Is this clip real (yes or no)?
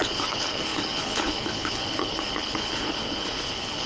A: no